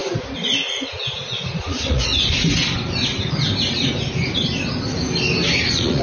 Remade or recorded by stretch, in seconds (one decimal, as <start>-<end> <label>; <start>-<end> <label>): 0.0-0.7 recorded; 0.7-2.1 remade; 2.1-5.6 recorded; 5.6-6.0 remade